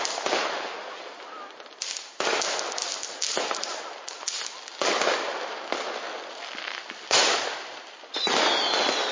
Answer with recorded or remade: recorded